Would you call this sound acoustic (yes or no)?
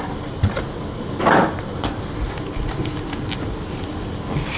yes